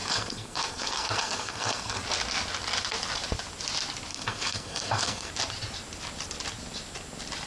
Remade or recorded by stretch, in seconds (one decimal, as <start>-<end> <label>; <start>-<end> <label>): 0.0-2.0 remade; 2.0-4.1 recorded; 4.1-5.3 remade; 5.3-7.5 recorded